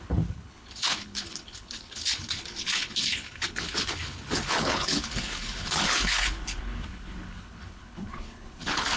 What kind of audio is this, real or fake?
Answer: fake